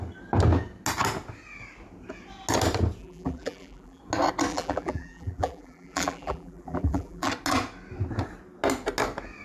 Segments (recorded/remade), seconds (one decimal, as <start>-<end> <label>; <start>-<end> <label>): 0.0-3.0 recorded; 3.0-4.0 remade; 4.0-4.5 recorded; 4.5-7.3 remade; 7.3-9.4 recorded